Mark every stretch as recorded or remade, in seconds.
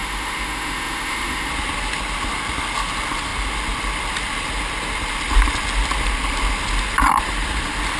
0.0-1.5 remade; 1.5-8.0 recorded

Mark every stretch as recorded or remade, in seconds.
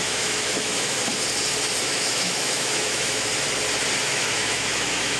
0.0-1.0 remade; 1.0-1.8 recorded; 1.8-3.3 remade; 3.3-4.0 recorded; 4.0-5.2 remade